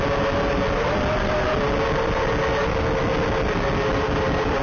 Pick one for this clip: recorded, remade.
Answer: recorded